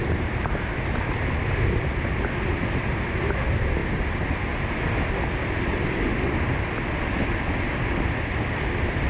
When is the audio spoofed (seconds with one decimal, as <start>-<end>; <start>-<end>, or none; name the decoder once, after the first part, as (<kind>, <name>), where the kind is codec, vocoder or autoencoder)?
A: none